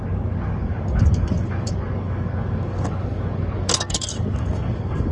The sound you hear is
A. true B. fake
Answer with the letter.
B